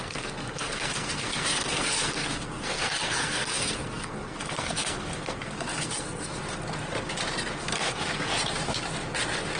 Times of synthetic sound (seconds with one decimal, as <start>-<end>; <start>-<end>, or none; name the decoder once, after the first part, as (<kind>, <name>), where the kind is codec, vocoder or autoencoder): 0.0-6.3 (codec, SNAC); 7.6-8.3